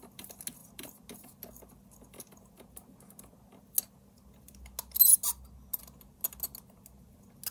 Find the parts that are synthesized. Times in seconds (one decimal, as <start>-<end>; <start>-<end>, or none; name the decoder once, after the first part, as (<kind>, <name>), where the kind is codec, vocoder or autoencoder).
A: none